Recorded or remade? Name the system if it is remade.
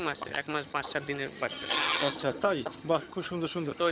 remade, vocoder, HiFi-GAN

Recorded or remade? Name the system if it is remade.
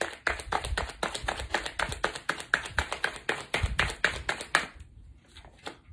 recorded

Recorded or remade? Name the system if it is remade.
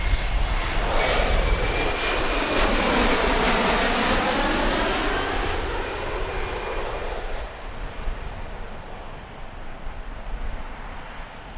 recorded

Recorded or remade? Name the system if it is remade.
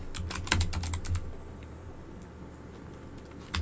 recorded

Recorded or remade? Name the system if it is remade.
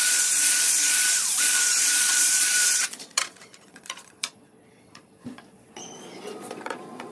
remade, vocoder, Vocos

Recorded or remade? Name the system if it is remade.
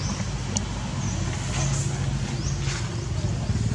recorded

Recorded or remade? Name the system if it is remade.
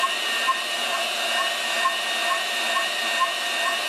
remade, vocoder, BigVGAN v2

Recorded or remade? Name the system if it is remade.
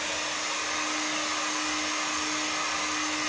recorded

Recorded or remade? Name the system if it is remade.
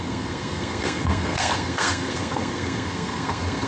remade, codec, SNAC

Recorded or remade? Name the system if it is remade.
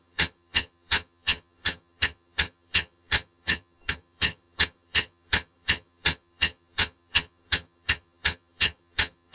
remade, vocoder, HiFi-GAN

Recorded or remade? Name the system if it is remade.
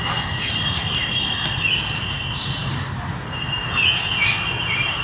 recorded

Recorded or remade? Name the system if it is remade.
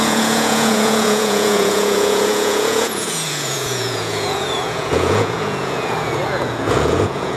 remade, vocoder, Vocos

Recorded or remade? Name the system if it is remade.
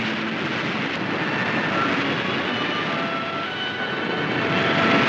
recorded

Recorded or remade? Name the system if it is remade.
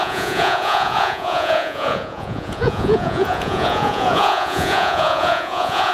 remade, vocoder, Vocos